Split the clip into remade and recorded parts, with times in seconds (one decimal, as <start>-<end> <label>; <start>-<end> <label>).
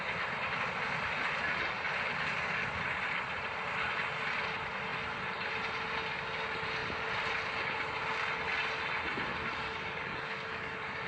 0.0-9.3 recorded; 9.3-11.1 remade